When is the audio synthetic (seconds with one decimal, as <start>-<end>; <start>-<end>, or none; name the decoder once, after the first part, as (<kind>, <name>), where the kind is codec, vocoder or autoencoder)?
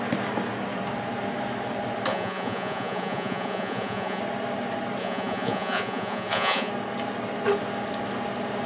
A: 2.1-4.2 (vocoder, Vocos); 5.0-6.7